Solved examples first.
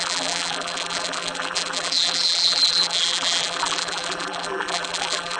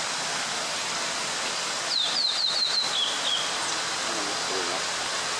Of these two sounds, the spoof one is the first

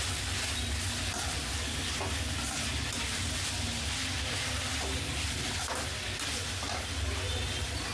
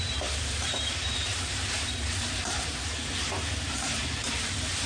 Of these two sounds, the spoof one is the second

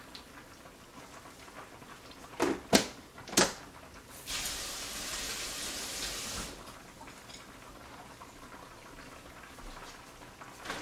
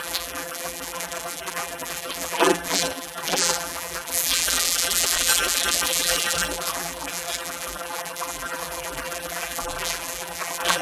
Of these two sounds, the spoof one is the second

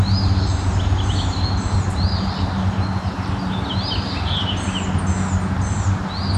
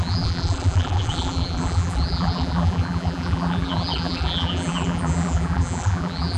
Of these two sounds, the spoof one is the second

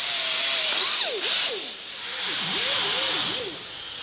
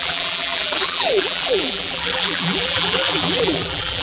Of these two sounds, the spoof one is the second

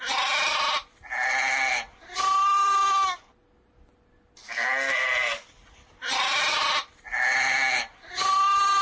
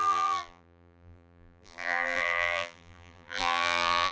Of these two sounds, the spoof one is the second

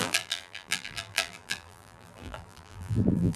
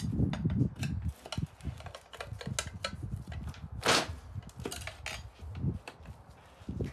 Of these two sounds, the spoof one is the first